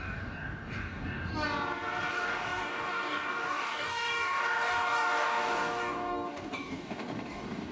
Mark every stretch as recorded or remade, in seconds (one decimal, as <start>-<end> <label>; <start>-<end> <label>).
0.0-1.3 remade; 1.3-2.1 recorded; 2.1-7.7 remade